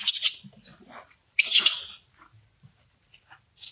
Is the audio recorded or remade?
recorded